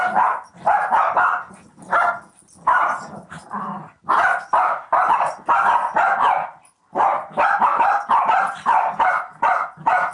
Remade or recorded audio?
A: recorded